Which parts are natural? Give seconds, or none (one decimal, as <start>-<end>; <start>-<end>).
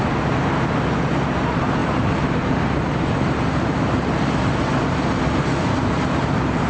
0.0-6.7